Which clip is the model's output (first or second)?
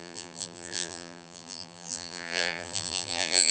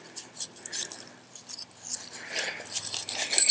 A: first